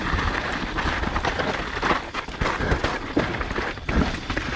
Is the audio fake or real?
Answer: real